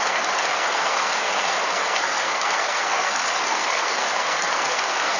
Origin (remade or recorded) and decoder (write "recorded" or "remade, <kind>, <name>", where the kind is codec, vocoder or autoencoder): remade, codec, SNAC